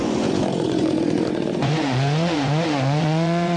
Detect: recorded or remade remade